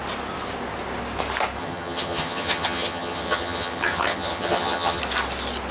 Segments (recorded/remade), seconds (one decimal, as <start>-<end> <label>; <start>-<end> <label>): 0.0-1.6 recorded; 1.6-5.0 remade; 5.0-5.7 recorded